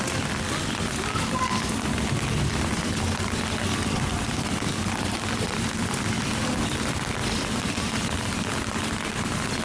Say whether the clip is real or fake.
real